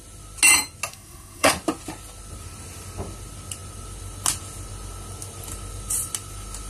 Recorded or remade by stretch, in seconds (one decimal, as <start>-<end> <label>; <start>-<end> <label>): 0.0-0.9 recorded; 0.9-1.5 remade; 1.5-6.7 recorded